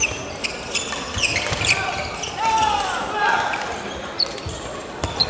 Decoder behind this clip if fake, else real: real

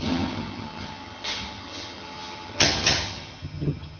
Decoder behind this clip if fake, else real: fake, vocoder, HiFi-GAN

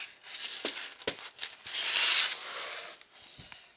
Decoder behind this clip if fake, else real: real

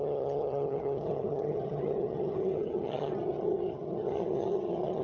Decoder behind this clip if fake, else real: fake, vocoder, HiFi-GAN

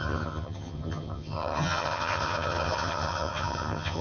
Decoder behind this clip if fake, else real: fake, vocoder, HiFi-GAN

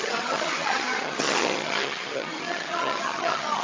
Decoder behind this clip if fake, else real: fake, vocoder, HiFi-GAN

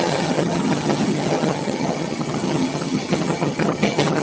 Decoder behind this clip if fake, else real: fake, vocoder, HiFi-GAN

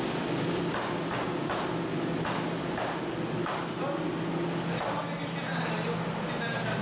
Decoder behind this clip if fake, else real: real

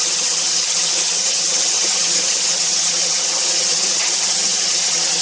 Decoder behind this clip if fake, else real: fake, vocoder, HiFi-GAN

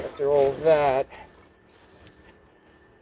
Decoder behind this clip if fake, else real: real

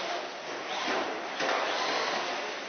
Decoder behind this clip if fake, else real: real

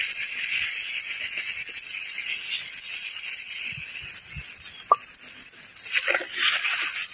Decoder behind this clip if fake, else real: real